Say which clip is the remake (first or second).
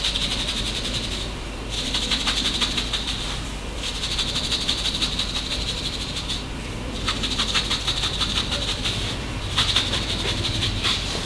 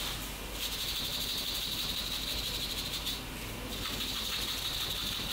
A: first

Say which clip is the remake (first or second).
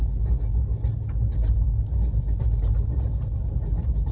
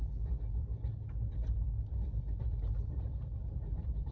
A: second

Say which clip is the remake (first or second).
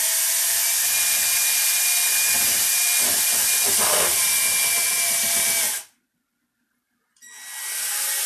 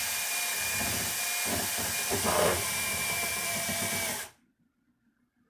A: second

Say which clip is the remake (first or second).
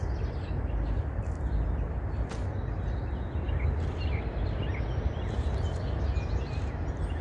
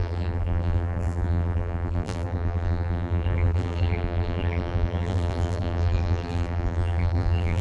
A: second